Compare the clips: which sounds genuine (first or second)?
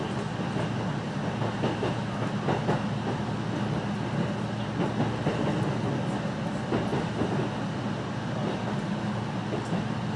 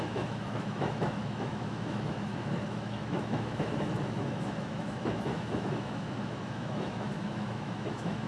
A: first